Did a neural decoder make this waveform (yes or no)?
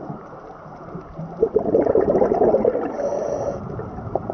yes